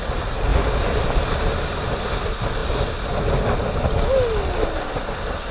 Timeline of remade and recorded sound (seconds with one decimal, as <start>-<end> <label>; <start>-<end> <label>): 0.0-5.5 recorded